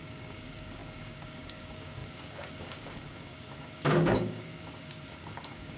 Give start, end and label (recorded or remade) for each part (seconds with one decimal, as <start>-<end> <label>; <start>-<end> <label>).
0.0-5.8 remade